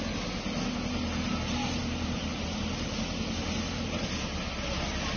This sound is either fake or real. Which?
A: real